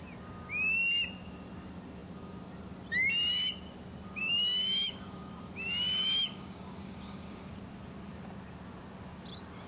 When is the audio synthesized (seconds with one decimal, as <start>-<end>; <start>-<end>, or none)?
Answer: 4.2-5.3; 6.0-7.5